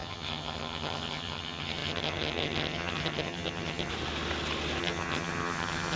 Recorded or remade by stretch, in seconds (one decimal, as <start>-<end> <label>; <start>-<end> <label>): 0.0-3.9 remade; 3.9-4.8 recorded; 4.8-6.0 remade